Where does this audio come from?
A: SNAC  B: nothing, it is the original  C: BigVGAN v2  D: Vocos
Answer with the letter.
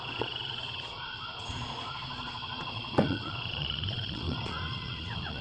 D